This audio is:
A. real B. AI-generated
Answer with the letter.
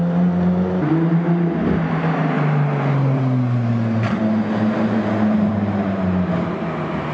A